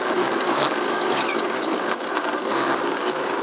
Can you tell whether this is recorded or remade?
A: remade